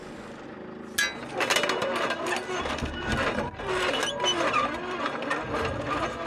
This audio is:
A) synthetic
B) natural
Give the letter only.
B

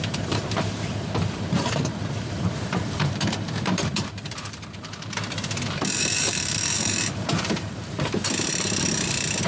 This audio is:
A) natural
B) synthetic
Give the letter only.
B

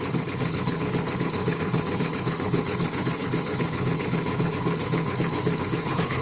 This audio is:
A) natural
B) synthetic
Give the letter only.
B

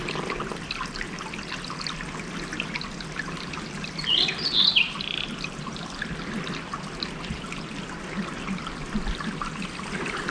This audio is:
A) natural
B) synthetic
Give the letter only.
A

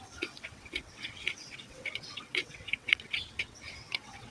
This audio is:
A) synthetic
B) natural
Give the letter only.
A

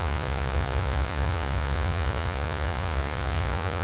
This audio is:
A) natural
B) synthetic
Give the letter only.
B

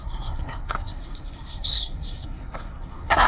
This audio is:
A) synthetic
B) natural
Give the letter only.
A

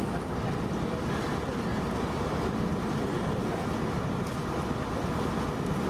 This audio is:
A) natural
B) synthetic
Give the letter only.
A